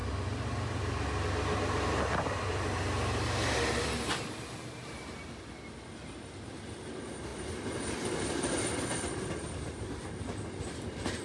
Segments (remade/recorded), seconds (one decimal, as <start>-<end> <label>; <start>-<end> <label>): 0.0-7.3 recorded; 7.3-9.6 remade; 9.6-11.2 recorded